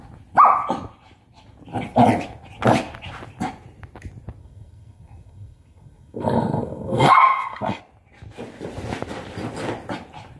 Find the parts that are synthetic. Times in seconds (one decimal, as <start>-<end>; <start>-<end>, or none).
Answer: 4.4-7.8